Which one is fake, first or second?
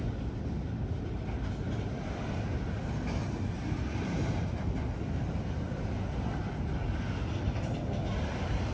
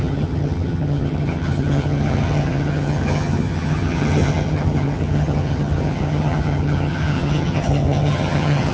second